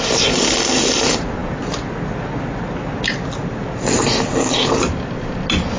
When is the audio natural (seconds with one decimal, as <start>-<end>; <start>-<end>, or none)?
0.0-5.8